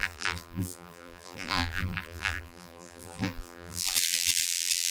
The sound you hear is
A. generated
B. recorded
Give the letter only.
A